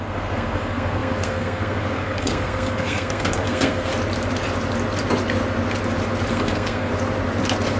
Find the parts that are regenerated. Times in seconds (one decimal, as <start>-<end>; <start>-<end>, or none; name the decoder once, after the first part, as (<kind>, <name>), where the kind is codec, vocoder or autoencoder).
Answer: 0.0-3.9 (codec, SNAC); 6.3-6.9